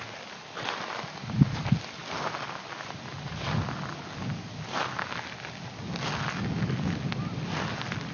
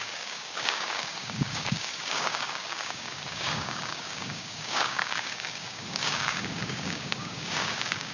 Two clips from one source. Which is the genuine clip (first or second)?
first